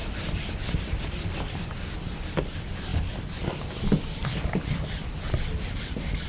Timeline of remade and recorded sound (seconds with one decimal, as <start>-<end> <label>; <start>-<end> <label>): 0.0-6.3 recorded